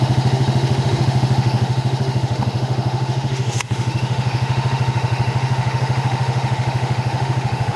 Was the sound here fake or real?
fake